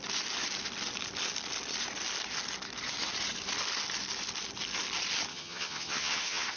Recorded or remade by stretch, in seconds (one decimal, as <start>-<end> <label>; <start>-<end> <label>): 0.0-5.3 recorded; 5.3-6.6 remade